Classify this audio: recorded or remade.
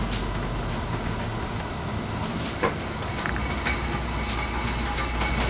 recorded